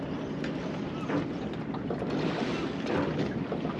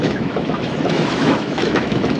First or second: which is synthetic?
second